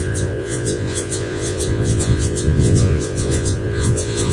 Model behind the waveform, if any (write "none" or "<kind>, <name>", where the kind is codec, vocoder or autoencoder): vocoder, Vocos